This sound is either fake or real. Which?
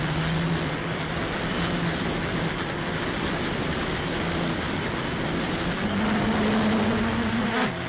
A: real